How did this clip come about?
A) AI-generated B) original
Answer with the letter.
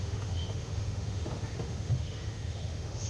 A